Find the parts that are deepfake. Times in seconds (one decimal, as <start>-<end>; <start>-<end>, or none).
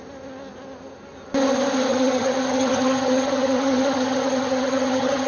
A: 1.9-5.3